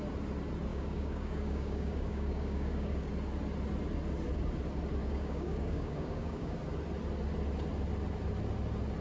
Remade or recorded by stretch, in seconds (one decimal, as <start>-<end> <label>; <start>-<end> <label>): 0.0-0.7 recorded; 0.7-3.1 remade; 3.1-5.0 recorded; 5.0-6.6 remade; 6.6-9.0 recorded